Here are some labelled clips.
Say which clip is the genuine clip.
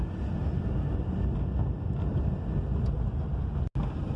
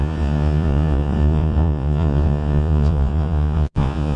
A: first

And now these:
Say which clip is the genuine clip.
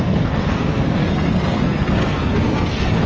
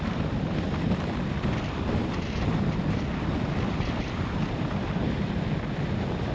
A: second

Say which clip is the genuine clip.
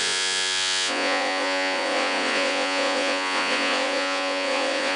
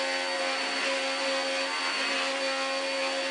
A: second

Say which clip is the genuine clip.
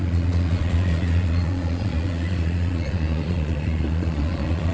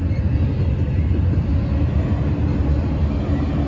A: second